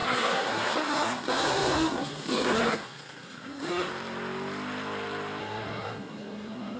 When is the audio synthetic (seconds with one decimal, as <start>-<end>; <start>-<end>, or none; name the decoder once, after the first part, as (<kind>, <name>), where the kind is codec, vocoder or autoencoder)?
0.0-3.9 (codec, SNAC); 5.4-6.8